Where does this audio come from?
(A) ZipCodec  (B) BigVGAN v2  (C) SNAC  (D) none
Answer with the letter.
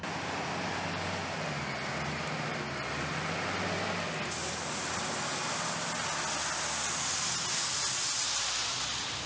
D